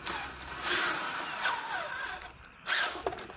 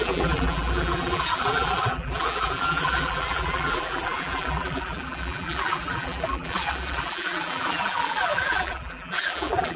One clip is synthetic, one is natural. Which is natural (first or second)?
first